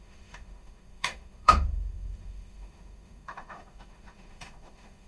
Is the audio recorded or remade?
remade